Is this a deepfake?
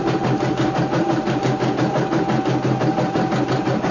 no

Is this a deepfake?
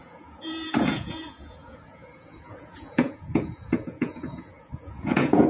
yes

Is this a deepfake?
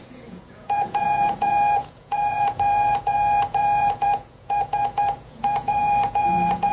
yes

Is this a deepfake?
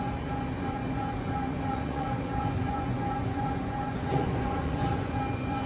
yes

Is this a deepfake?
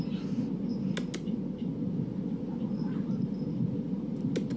no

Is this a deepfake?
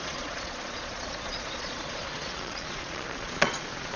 yes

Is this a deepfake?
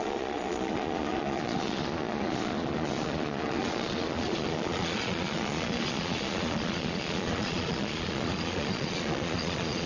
yes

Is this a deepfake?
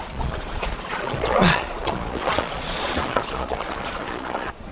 yes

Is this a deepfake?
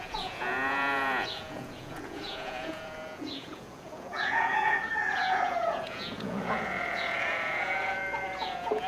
yes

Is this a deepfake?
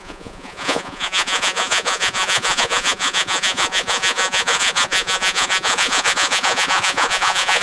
yes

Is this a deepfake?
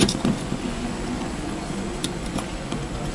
yes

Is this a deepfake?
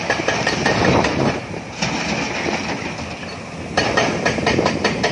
no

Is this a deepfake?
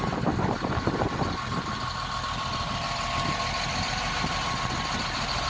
no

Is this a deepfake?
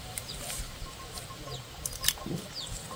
no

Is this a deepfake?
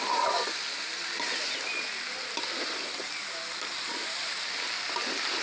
no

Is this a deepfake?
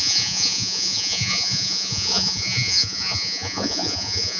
yes